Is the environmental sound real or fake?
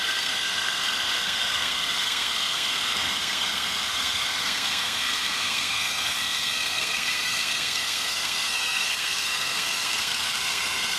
fake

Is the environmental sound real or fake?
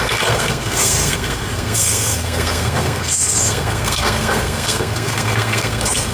fake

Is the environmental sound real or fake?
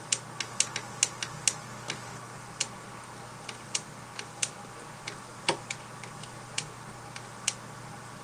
real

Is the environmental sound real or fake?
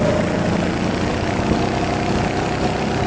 real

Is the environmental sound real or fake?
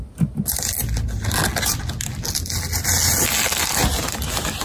real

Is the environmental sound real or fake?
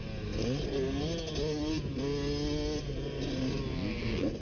real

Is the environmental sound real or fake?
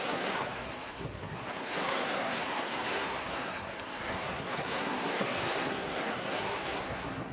fake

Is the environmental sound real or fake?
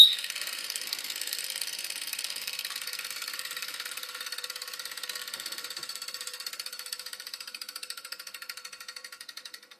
fake